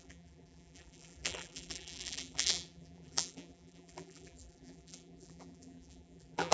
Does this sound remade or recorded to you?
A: remade